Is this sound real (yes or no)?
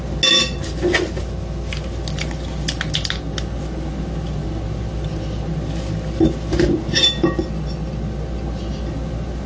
yes